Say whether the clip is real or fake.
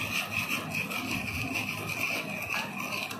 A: real